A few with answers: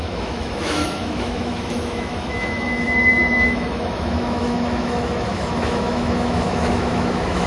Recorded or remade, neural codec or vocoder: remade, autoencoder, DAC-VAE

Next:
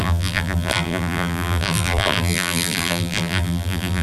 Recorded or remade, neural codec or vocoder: remade, vocoder, BigVGAN v2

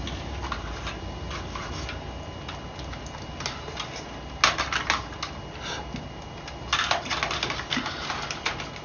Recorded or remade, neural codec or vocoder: recorded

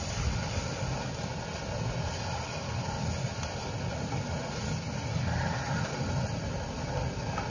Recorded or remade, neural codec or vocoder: recorded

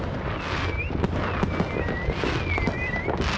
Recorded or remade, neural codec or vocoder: recorded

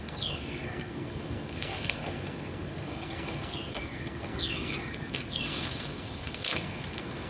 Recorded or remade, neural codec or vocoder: remade, codec, SNAC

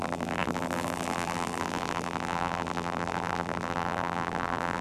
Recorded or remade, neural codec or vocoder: remade, vocoder, BigVGAN v2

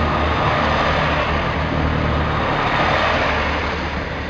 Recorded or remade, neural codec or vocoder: recorded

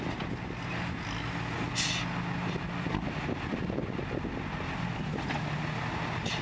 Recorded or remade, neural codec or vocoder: recorded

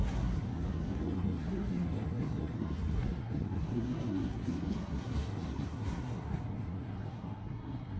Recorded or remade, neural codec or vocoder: remade, codec, SNAC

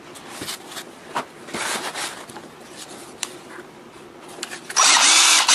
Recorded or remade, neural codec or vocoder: recorded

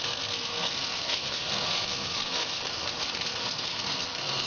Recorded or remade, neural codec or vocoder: remade, codec, SNAC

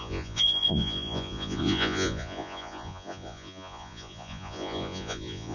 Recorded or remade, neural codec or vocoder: remade, vocoder, Vocos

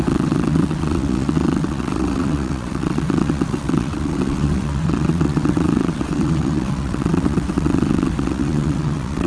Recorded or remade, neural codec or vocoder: remade, vocoder, WaveNeXt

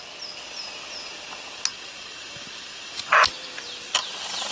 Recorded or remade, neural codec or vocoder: recorded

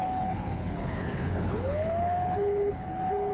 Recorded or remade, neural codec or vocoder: remade, codec, HILCodec